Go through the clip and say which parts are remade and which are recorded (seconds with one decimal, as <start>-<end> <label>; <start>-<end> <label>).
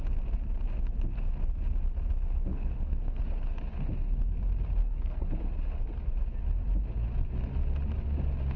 0.0-2.5 recorded; 2.5-3.2 remade; 3.2-4.8 recorded; 4.8-5.3 remade; 5.3-8.6 recorded